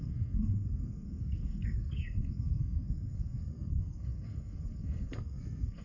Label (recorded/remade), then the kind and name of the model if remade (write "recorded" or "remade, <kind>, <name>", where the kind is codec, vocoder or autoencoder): remade, codec, SNAC